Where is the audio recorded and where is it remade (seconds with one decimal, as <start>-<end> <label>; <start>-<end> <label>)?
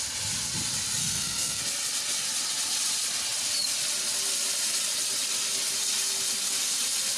0.0-1.0 recorded; 1.0-1.6 remade; 1.6-7.2 recorded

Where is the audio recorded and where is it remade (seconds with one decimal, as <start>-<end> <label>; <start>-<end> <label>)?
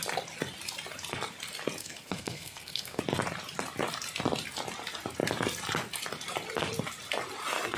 0.0-1.8 recorded; 1.8-3.0 remade; 3.0-7.8 recorded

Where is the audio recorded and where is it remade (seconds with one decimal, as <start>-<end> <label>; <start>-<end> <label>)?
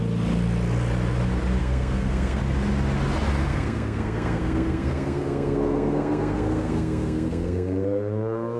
0.0-1.6 recorded; 1.6-2.4 remade; 2.4-3.5 recorded; 3.5-8.6 remade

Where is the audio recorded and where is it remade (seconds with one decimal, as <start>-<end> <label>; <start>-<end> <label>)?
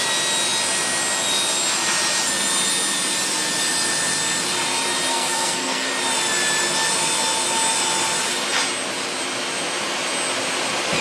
0.0-5.1 recorded; 5.1-5.9 remade; 5.9-11.0 recorded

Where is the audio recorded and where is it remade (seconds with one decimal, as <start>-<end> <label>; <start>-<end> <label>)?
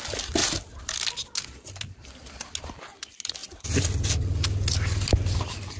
0.0-5.8 recorded